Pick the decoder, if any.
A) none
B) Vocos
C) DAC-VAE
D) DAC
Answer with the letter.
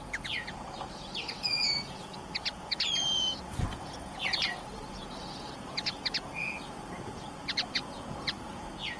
B